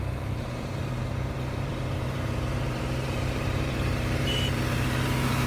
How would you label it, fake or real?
fake